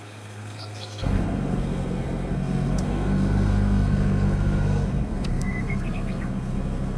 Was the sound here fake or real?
fake